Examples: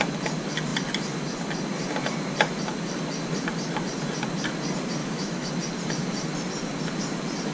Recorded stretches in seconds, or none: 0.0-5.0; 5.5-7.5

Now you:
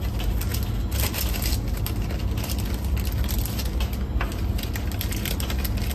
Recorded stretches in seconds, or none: 0.0-5.9

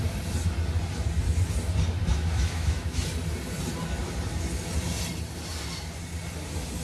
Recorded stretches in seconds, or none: 0.0-2.1; 3.1-6.8

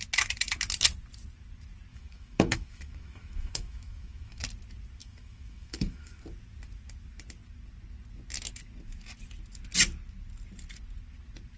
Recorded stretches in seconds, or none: 0.0-1.9; 4.4-5.0; 6.2-11.6

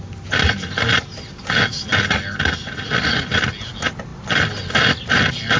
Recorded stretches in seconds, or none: 0.0-5.6